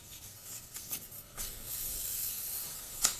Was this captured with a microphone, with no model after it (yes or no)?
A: no